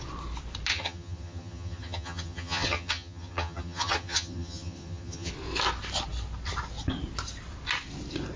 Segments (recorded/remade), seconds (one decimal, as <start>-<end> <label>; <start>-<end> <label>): 0.0-0.7 recorded; 0.7-5.3 remade; 5.3-8.4 recorded